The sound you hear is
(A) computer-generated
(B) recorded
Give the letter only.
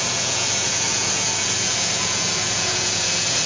A